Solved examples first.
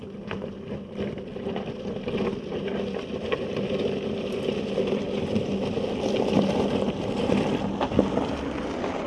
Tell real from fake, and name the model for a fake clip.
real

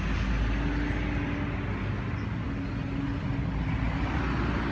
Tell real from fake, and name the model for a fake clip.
real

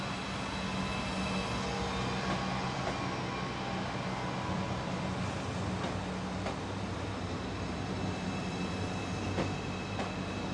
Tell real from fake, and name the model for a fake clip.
real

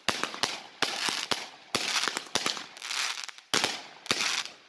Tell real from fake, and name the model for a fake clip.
real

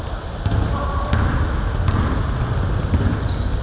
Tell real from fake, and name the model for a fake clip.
real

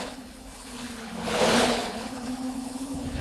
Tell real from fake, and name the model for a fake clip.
fake, codec, HILCodec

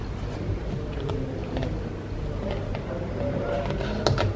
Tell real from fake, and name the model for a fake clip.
real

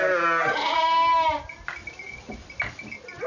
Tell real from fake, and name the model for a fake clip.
real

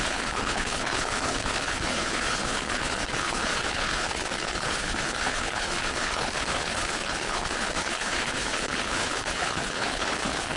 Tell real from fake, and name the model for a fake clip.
fake, codec, HILCodec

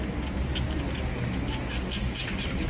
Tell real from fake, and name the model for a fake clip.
real